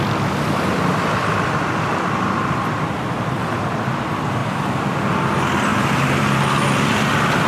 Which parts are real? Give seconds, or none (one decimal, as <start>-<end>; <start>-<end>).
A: 0.0-7.5